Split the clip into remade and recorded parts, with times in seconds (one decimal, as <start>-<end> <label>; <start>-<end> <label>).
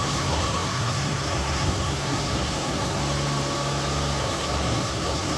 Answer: 0.0-3.0 remade; 3.0-4.2 recorded; 4.2-5.4 remade